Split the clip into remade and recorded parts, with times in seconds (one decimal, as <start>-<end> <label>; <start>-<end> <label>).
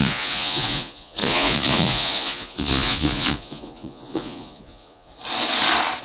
0.0-5.1 remade; 5.1-6.0 recorded